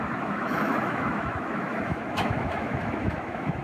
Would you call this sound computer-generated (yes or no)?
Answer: yes